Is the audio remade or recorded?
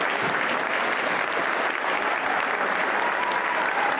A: recorded